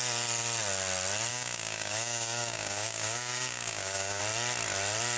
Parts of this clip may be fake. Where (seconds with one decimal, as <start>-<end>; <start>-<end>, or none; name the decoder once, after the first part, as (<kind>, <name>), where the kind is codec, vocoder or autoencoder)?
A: 1.3-4.2 (codec, DAC)